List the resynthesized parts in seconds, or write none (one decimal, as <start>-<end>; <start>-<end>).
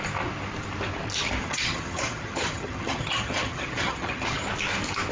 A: 1.4-4.5